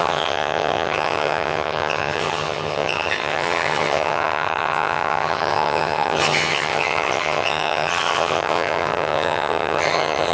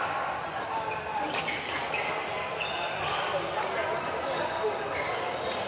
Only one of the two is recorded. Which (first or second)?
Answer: second